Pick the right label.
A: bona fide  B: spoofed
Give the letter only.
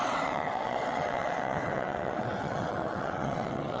B